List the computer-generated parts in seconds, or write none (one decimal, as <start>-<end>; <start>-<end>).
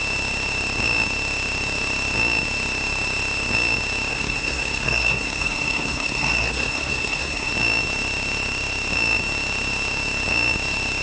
4.1-7.5